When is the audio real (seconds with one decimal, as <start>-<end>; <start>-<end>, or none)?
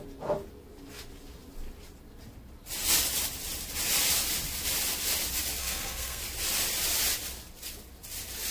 0.0-5.6; 6.2-8.5